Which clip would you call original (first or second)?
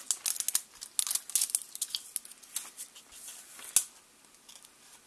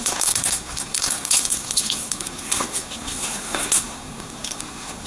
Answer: first